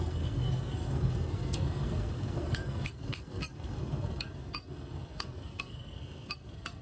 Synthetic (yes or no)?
yes